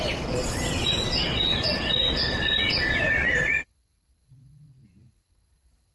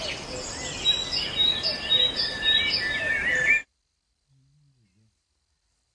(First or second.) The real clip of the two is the second